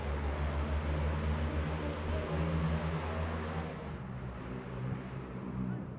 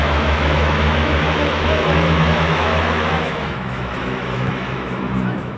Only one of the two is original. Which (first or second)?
first